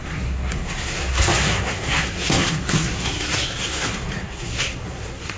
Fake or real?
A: fake